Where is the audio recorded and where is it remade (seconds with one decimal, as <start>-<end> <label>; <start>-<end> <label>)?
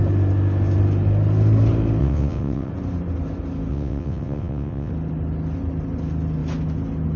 0.0-2.0 recorded; 2.0-2.7 remade; 2.7-3.7 recorded; 3.7-4.9 remade; 4.9-7.2 recorded